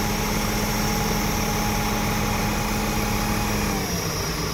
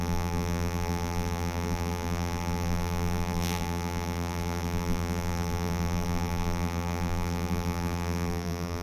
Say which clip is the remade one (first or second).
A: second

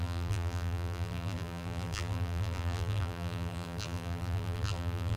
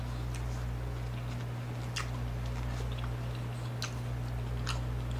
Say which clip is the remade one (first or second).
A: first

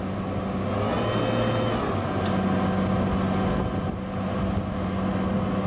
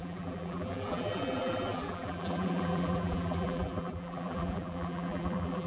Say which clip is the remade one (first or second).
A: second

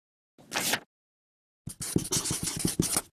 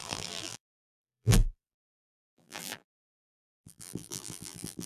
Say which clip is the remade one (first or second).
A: second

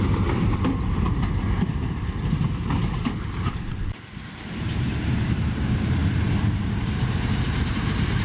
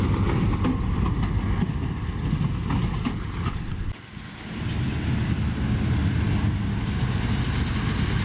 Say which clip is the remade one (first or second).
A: first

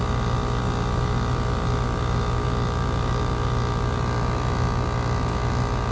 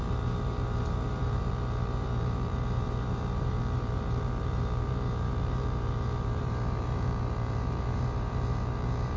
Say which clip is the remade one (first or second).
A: second